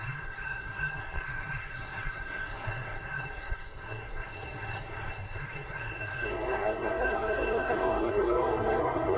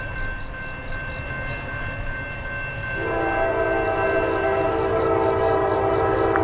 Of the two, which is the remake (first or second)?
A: first